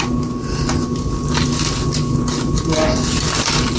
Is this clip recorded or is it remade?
recorded